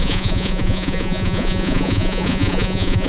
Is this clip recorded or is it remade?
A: remade